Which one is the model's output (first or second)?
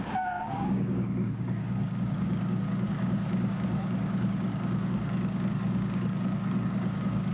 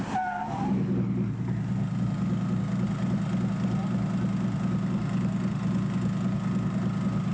first